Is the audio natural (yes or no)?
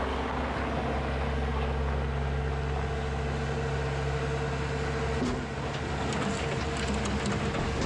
yes